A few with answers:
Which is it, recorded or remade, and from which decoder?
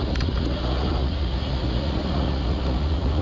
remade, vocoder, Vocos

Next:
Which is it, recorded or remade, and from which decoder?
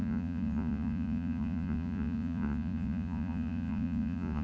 remade, vocoder, Vocos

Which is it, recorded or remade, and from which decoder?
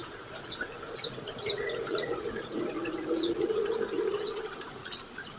remade, vocoder, Vocos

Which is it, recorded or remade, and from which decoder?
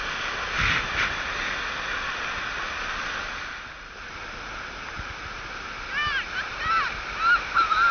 recorded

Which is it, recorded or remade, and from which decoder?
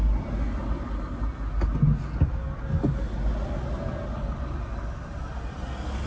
recorded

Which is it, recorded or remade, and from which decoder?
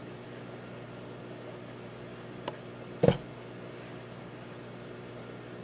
recorded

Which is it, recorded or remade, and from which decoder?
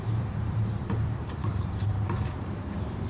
remade, vocoder, BigVGAN v2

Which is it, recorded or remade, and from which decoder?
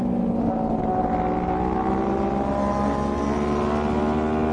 recorded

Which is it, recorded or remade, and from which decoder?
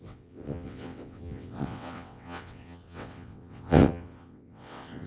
remade, vocoder, WaveNeXt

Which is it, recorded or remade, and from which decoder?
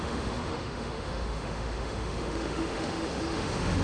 remade, autoencoder, DAC-VAE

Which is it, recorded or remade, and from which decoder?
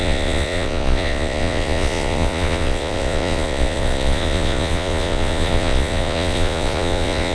remade, vocoder, Vocos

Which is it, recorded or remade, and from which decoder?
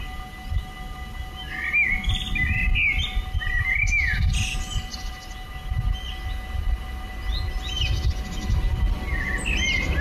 recorded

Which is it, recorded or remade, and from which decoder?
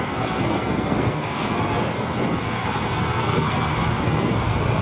remade, codec, SNAC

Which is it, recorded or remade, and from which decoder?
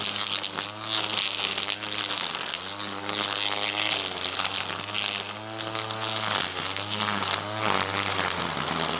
recorded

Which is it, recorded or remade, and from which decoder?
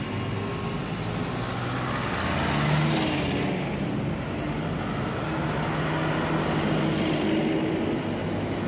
recorded